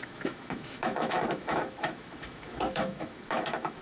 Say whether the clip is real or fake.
fake